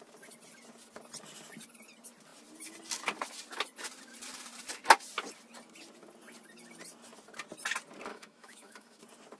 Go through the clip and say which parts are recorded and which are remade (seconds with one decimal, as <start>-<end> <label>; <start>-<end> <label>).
0.0-8.1 recorded; 8.1-9.0 remade; 9.0-9.4 recorded